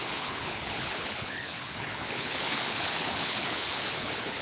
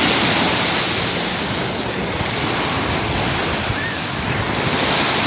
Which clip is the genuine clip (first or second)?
second